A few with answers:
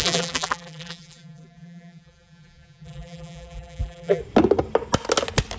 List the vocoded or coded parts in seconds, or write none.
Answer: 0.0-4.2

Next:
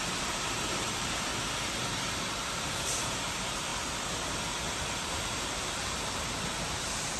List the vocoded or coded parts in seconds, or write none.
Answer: 0.0-1.3; 2.7-3.7; 5.0-7.2

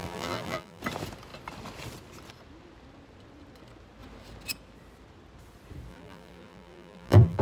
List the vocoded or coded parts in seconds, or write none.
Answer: 0.0-0.8; 5.9-7.4

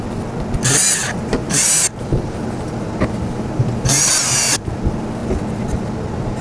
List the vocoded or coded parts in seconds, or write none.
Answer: 1.0-4.7